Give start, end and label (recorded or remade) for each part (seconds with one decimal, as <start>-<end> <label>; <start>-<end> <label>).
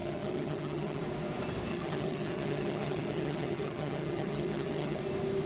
0.0-1.0 remade; 1.0-1.7 recorded; 1.7-5.0 remade; 5.0-5.5 recorded